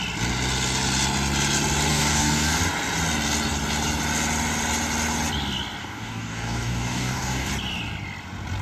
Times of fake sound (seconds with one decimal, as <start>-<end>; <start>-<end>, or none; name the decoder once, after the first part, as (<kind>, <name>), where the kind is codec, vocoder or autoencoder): 1.9-2.6 (codec, DAC); 5.8-7.5